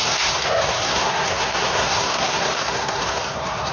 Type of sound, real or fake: fake